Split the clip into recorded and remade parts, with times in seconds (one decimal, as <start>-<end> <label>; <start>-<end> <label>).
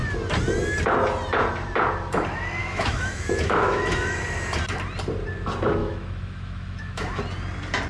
0.0-2.6 recorded; 2.6-4.2 remade; 4.2-5.8 recorded; 5.8-7.2 remade; 7.2-7.9 recorded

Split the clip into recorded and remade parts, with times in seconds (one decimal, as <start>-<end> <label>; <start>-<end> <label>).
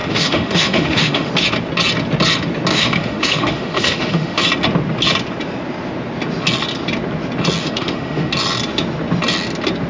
0.0-1.3 remade; 1.3-2.7 recorded; 2.7-4.4 remade; 4.4-7.6 recorded; 7.6-8.3 remade; 8.3-9.9 recorded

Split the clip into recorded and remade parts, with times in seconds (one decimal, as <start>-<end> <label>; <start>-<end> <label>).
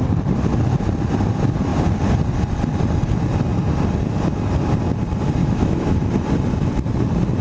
0.0-5.4 recorded; 5.4-6.1 remade; 6.1-7.4 recorded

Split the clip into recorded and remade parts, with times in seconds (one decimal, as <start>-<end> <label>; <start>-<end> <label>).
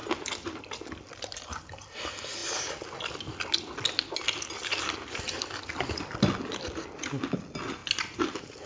0.0-8.7 recorded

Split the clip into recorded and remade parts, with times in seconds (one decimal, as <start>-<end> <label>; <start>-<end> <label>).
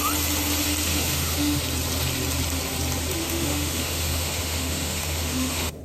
0.0-0.9 recorded; 0.9-1.6 remade; 1.6-3.2 recorded; 3.2-5.8 remade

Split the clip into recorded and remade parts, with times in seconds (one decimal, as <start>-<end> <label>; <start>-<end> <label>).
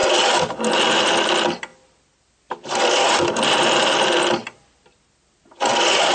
0.0-6.1 recorded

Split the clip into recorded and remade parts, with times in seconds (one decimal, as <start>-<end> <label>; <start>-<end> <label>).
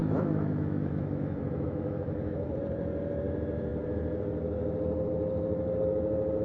0.0-2.5 remade; 2.5-6.4 recorded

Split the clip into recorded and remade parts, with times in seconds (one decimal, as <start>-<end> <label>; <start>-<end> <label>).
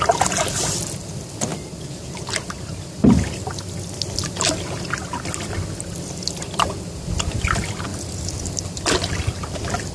0.0-9.9 recorded